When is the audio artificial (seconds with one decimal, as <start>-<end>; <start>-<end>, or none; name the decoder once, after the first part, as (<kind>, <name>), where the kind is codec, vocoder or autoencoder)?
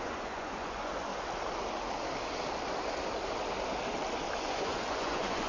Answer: 0.0-1.1 (vocoder, Vocos); 4.4-5.5